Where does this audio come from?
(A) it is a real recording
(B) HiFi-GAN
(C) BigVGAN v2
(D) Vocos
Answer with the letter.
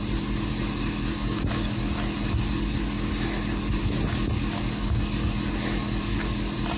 A